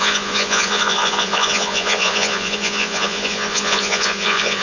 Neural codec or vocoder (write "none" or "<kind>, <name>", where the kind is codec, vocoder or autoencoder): vocoder, Vocos